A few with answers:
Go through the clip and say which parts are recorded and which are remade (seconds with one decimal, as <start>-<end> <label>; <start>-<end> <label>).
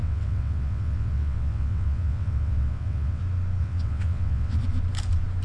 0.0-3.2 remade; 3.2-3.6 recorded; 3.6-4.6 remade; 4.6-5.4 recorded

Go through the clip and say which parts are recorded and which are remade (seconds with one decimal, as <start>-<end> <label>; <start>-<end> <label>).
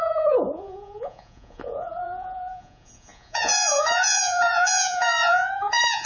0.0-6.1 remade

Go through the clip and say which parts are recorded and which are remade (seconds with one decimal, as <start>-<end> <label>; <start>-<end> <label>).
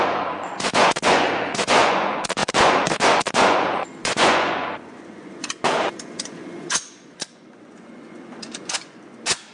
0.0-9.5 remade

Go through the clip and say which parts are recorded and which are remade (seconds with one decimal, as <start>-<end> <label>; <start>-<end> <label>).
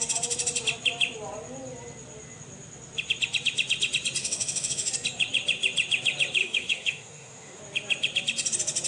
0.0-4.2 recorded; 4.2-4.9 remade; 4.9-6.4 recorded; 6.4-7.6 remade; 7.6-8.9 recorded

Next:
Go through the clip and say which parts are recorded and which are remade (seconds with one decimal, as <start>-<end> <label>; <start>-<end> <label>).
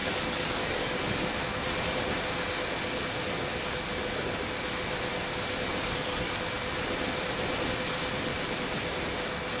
0.0-1.0 remade; 1.0-5.7 recorded; 5.7-6.3 remade; 6.3-9.6 recorded